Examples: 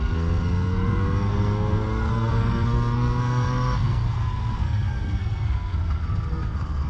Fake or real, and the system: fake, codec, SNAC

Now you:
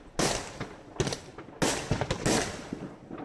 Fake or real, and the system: real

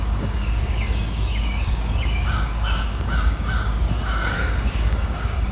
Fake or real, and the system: fake, codec, DAC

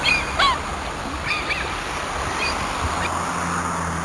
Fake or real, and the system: real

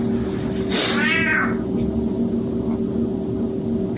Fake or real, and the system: real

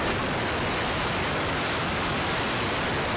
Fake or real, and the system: real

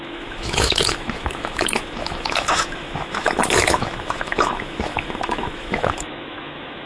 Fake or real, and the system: fake, autoencoder, DAC-VAE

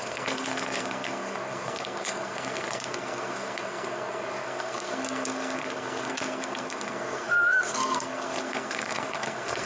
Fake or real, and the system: fake, codec, SNAC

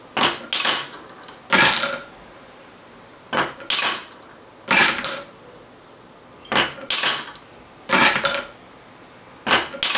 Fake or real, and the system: real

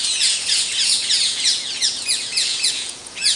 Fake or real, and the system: fake, vocoder, Vocos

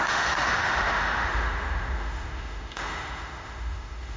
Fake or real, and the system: fake, autoencoder, DAC-VAE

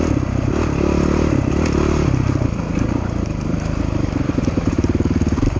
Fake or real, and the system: fake, vocoder, BigVGAN v2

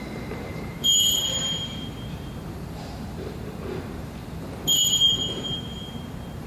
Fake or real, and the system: fake, vocoder, BigVGAN v2